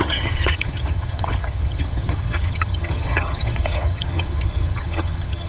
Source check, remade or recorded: remade